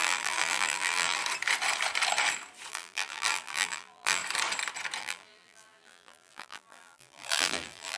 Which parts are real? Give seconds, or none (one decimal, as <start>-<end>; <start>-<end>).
1.2-2.7; 4.2-5.0